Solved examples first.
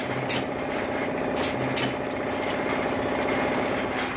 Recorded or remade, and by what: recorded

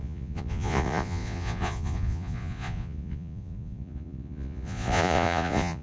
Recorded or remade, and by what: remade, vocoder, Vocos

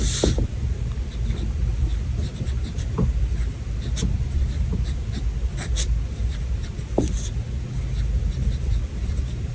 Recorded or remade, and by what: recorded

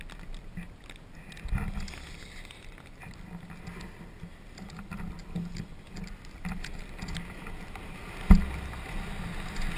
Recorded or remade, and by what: recorded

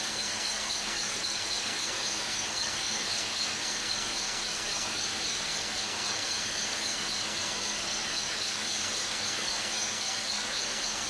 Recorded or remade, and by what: remade, codec, SNAC